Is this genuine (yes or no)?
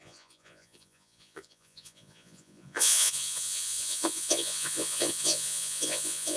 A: no